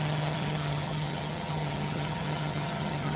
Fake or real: fake